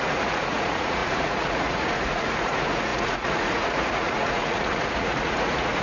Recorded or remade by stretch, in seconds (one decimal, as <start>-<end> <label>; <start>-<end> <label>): 0.0-5.8 remade